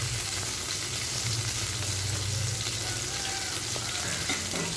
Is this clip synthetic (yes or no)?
no